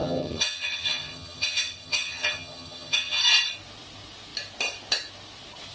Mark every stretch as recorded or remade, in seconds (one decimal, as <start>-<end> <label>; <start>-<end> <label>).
0.0-3.2 remade; 3.2-5.7 recorded